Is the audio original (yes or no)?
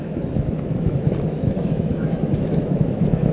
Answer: no